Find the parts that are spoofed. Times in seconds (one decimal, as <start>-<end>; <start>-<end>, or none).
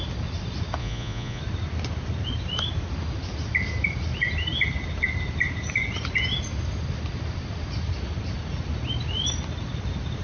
0.8-1.4